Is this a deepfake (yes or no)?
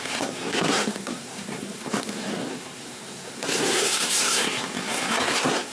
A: yes